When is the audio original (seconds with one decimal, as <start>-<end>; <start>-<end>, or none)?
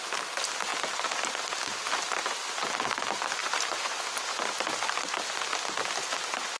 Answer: 0.0-3.4; 4.0-6.6